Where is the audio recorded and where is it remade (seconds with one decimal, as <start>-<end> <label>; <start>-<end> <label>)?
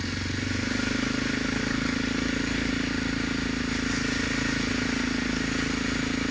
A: 0.0-1.6 recorded; 1.6-2.7 remade; 2.7-6.3 recorded